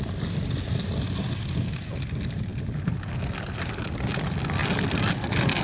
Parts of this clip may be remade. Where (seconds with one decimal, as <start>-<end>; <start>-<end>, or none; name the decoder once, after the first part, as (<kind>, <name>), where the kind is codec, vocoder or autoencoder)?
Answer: none